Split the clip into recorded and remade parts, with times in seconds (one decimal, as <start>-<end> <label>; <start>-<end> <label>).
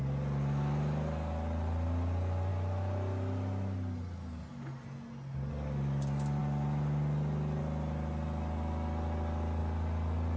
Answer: 0.0-10.4 recorded